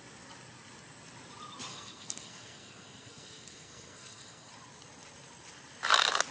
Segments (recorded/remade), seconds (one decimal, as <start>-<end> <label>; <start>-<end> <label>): 0.0-1.7 recorded; 1.7-4.5 remade; 4.5-6.3 recorded